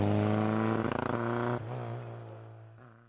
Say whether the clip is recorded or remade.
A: recorded